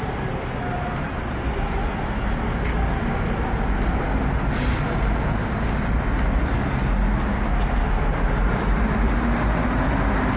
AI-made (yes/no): no